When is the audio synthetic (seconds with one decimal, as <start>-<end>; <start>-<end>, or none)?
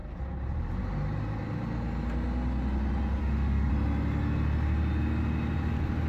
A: 3.2-3.7